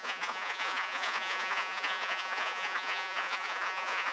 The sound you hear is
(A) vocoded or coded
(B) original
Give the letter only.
A